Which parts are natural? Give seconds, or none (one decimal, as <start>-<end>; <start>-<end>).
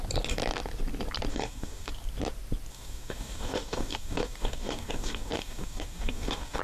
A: 0.0-1.3; 1.9-2.7